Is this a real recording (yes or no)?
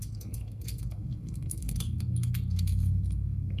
no